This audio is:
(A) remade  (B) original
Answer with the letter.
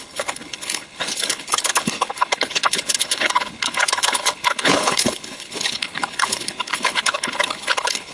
A